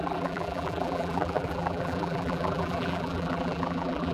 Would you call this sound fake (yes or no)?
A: yes